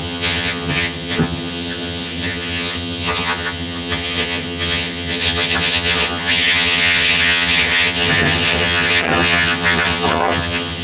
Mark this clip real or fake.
fake